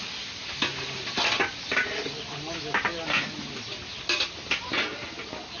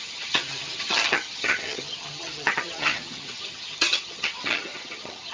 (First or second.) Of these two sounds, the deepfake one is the second